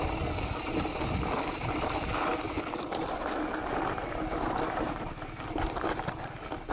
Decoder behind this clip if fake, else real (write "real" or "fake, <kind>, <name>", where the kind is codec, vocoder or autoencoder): real